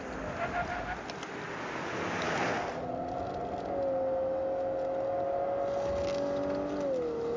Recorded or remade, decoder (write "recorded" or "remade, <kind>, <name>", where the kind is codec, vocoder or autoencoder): recorded